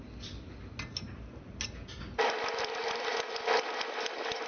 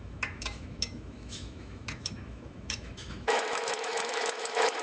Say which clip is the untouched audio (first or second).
first